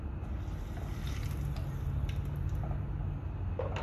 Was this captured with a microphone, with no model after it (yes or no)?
yes